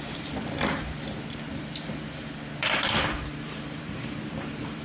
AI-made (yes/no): yes